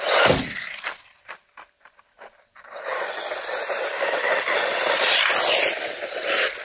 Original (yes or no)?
yes